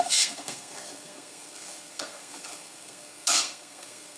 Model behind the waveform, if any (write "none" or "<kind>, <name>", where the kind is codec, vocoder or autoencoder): codec, SNAC